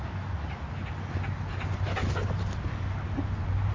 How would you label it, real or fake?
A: real